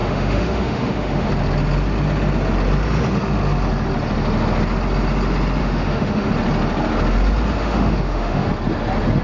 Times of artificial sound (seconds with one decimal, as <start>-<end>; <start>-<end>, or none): 0.0-1.3; 5.6-6.3; 7.6-8.5